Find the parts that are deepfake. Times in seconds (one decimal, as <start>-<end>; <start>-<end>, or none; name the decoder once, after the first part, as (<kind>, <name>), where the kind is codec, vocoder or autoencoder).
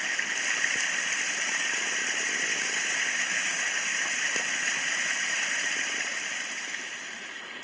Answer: 2.5-3.6 (codec, DAC)